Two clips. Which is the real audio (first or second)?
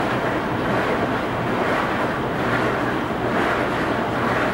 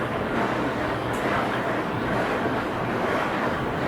first